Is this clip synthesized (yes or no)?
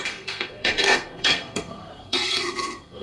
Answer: yes